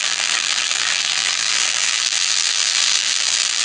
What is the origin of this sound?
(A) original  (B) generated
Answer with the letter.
B